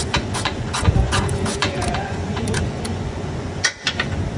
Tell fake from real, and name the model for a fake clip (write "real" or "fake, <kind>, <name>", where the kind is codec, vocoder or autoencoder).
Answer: fake, vocoder, Vocos